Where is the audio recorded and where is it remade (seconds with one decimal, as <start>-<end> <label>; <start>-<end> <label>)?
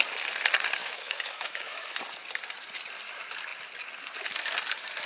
0.0-0.8 recorded; 0.8-2.0 remade; 2.0-5.1 recorded